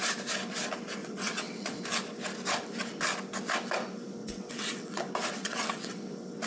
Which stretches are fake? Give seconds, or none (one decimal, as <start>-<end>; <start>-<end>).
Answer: 1.0-1.8; 4.2-5.0; 5.4-6.0